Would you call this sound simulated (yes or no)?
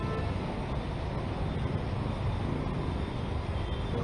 no